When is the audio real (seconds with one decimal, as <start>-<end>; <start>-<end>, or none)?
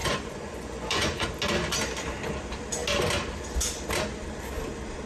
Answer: 1.3-5.1